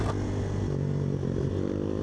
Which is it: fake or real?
real